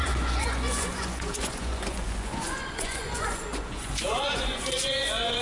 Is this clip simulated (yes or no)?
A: yes